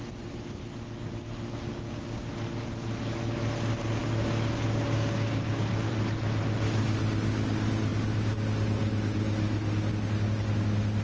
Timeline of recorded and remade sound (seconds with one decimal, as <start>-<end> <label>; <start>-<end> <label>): 0.0-1.7 recorded; 1.7-2.3 remade; 2.3-4.0 recorded; 4.0-5.9 remade; 5.9-11.0 recorded